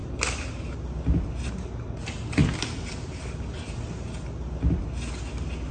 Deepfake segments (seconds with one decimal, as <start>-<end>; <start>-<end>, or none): none